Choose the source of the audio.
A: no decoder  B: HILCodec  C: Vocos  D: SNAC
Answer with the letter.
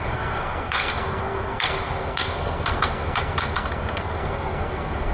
D